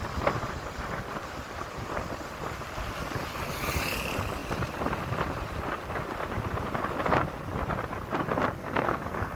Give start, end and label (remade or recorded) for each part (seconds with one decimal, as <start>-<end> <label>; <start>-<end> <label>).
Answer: 0.0-8.6 recorded; 8.6-9.4 remade